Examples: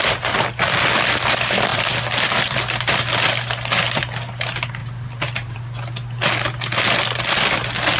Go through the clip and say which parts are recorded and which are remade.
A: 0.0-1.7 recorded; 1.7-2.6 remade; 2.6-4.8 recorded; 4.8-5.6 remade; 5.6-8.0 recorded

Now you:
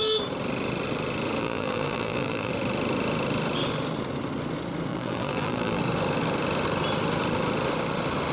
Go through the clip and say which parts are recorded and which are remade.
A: 0.0-1.4 recorded; 1.4-2.5 remade; 2.5-4.9 recorded; 4.9-5.8 remade; 5.8-8.3 recorded

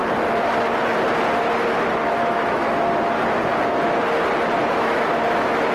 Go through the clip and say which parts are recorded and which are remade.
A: 0.0-2.0 recorded; 2.0-2.7 remade; 2.7-4.6 recorded; 4.6-5.1 remade; 5.1-5.7 recorded

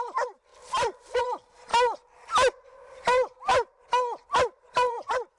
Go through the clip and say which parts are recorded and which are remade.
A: 0.0-1.7 remade; 1.7-4.9 recorded; 4.9-5.4 remade

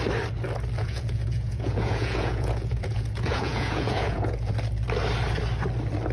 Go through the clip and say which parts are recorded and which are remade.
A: 0.0-0.8 recorded; 0.8-4.5 remade; 4.5-6.1 recorded

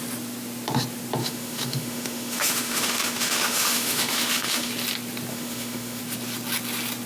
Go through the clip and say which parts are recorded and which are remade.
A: 0.0-1.2 recorded; 1.2-4.7 remade; 4.7-5.3 recorded; 5.3-6.0 remade; 6.0-7.1 recorded

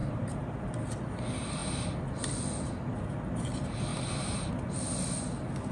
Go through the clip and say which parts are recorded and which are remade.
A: 0.0-0.6 remade; 0.6-3.9 recorded; 3.9-4.5 remade; 4.5-5.7 recorded

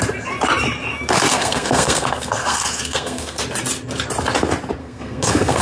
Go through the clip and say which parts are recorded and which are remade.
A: 0.0-1.3 recorded; 1.3-3.4 remade; 3.4-4.8 recorded; 4.8-5.6 remade